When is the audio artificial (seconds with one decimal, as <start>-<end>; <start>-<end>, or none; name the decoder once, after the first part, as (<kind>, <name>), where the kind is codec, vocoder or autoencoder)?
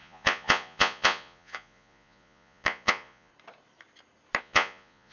0.0-3.3 (vocoder, Vocos); 4.4-5.1